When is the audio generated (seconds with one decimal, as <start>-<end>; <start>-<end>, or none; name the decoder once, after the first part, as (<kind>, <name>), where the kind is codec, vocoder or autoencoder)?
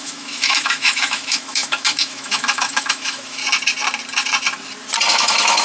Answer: 0.0-3.4 (autoencoder, DAC-VAE); 5.1-5.6